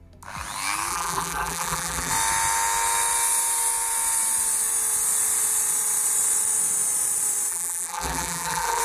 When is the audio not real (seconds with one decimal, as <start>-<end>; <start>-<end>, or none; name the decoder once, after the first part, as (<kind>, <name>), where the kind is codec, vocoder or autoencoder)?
0.9-2.1 (vocoder, BigVGAN v2); 7.5-8.8